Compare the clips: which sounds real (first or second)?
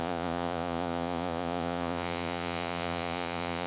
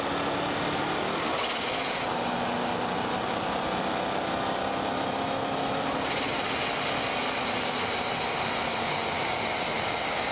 second